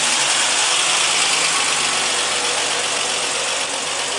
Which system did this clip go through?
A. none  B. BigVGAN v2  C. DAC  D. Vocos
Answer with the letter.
A